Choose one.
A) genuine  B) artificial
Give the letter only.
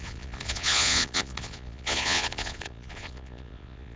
B